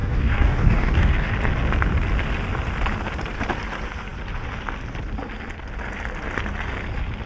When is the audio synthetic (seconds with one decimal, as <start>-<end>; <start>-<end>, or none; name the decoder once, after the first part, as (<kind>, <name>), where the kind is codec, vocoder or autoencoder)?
0.0-1.3 (codec, DAC)